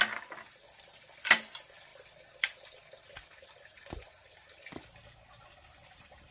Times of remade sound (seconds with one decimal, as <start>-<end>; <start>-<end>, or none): 0.0-6.3